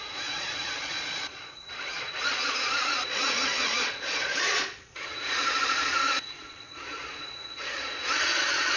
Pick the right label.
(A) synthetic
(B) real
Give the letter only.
A